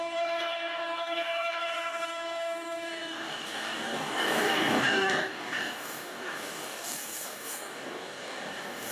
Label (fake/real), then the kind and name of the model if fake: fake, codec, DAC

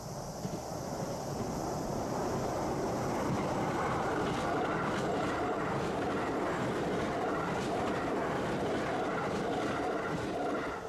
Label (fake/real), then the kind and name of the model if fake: real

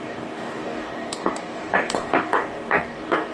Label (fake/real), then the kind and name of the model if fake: fake, codec, DAC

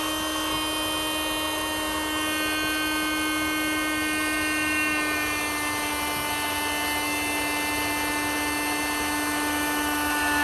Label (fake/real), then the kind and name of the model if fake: real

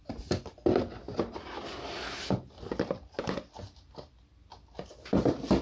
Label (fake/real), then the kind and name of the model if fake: real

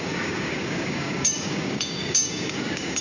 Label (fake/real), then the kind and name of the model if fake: fake, codec, DAC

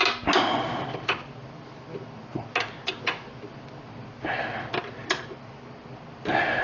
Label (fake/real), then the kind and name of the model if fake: real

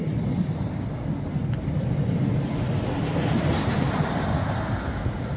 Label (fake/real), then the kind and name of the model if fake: real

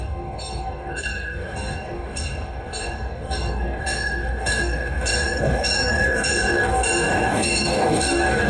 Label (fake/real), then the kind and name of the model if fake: fake, codec, DAC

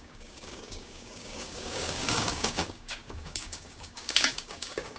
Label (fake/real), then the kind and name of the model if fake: fake, codec, DAC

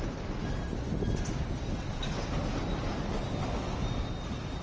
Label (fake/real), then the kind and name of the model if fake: real